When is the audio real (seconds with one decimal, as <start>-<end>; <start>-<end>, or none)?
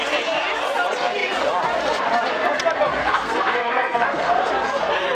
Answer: 0.0-3.0; 4.5-5.1